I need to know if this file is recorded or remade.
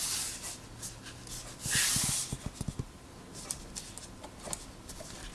recorded